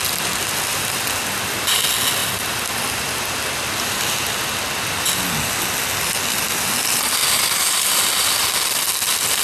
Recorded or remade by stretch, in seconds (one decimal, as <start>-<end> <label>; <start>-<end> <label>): 0.0-2.2 recorded; 2.2-3.2 remade; 3.2-9.4 recorded